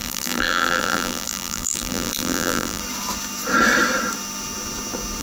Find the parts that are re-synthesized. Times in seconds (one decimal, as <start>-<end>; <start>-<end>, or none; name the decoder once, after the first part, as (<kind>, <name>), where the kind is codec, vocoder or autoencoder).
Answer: 0.0-2.8 (vocoder, BigVGAN v2)